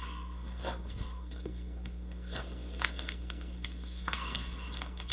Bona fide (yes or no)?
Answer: no